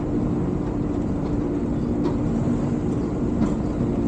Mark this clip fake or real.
fake